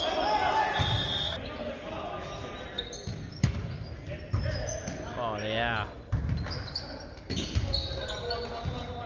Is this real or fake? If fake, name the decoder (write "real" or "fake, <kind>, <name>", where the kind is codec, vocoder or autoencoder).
real